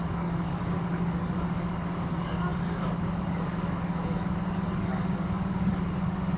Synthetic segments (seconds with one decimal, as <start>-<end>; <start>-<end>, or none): 0.0-6.4